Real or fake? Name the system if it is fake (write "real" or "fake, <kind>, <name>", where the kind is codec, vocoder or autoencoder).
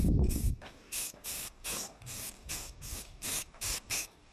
fake, codec, DAC